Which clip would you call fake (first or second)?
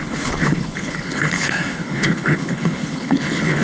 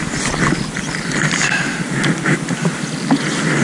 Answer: first